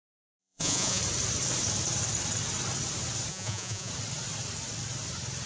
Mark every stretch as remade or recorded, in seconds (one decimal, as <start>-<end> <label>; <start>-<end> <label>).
0.0-0.4 recorded; 0.4-1.0 remade; 1.0-3.3 recorded; 3.3-3.9 remade; 3.9-5.5 recorded